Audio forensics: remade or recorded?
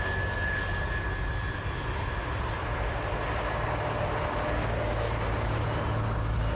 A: recorded